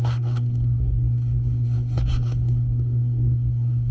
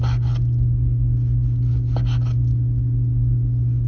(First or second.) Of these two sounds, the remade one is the first